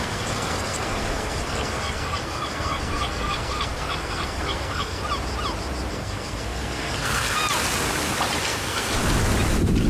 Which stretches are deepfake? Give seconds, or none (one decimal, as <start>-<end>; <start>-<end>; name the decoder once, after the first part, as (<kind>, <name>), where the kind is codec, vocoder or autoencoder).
0.0-5.0 (codec, SNAC); 5.9-7.4; 8.4-9.0